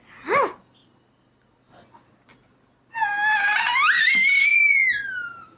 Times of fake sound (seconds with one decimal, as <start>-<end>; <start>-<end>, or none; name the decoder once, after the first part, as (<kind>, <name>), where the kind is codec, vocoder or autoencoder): none